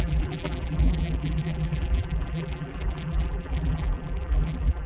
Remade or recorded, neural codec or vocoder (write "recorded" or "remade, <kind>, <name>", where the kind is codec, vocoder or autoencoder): remade, vocoder, BigVGAN v2